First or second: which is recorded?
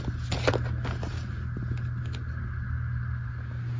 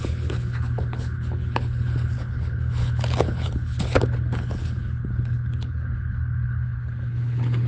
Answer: first